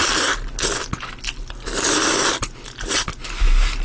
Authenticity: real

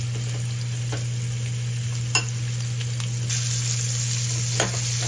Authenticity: real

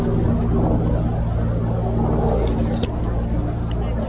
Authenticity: real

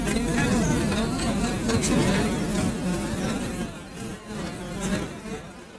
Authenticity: real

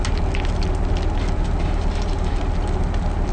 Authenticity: real